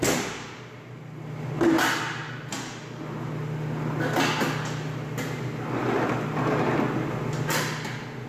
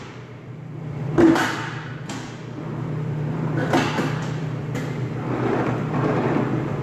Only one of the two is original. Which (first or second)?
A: first